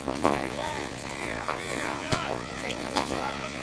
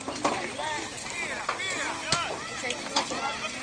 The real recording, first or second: second